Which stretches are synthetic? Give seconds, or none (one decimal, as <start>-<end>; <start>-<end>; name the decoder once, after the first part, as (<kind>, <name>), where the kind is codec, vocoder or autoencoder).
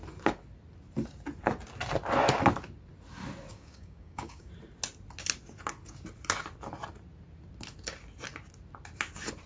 3.5-4.5 (codec, DAC)